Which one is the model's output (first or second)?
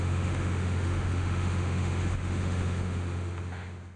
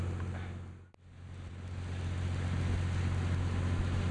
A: first